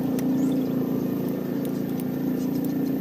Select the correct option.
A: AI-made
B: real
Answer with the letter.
B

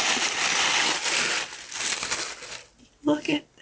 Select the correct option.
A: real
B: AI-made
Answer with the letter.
A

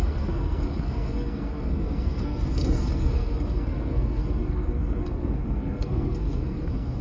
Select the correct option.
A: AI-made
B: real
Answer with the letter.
A